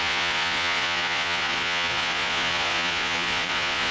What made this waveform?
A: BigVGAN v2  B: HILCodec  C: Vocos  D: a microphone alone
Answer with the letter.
C